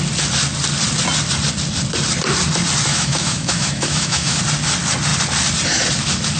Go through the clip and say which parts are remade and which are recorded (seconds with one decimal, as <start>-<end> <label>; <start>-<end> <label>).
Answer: 0.0-2.9 recorded; 2.9-4.4 remade; 4.4-6.4 recorded